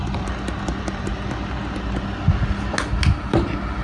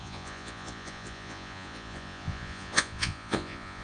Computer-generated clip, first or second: second